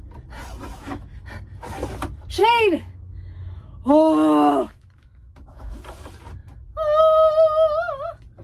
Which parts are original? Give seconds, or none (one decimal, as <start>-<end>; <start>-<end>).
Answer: 0.0-0.7; 1.3-2.4; 5.7-6.4; 7.3-8.4